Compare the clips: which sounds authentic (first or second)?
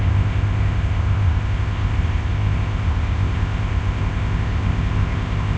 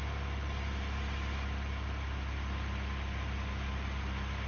second